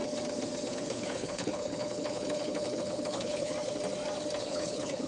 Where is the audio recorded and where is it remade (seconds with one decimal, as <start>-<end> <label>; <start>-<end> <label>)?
0.0-0.7 recorded; 0.7-3.5 remade; 3.5-4.4 recorded; 4.4-5.1 remade